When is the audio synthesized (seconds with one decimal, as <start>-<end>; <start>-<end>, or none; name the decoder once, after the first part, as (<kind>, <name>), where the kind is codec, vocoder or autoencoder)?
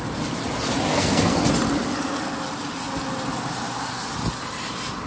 0.9-1.5 (codec, SNAC)